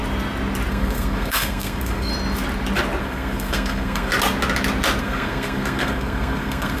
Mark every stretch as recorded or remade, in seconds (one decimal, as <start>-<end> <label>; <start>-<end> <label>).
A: 0.0-0.7 recorded; 0.7-2.1 remade; 2.1-3.0 recorded; 3.0-4.1 remade; 4.1-5.0 recorded; 5.0-6.8 remade